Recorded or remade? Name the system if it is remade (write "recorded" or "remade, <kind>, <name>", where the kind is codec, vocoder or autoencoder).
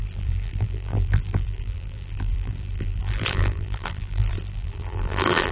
remade, vocoder, BigVGAN v2